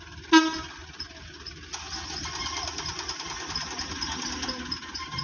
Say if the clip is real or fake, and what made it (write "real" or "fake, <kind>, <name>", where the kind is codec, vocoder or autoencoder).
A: real